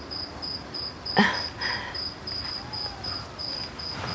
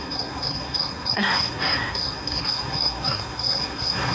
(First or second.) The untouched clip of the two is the first